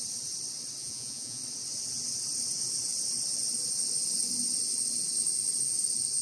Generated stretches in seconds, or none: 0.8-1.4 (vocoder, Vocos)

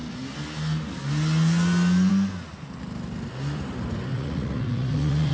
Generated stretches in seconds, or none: 4.1-5.3 (vocoder, Vocos)

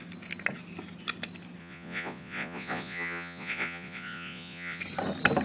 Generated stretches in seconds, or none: 1.6-4.8 (vocoder, Vocos)